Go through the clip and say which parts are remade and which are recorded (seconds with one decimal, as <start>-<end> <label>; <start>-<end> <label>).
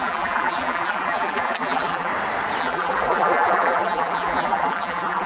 0.0-2.1 remade; 2.1-2.6 recorded; 2.6-5.3 remade